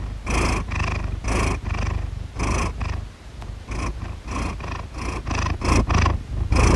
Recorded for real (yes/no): yes